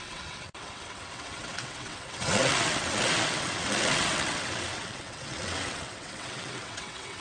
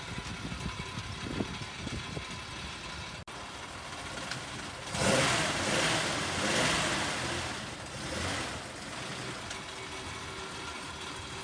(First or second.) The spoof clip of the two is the first